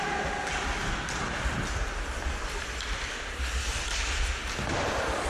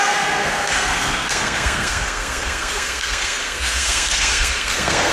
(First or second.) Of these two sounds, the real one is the first